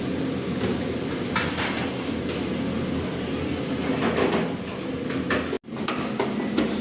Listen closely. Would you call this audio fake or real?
real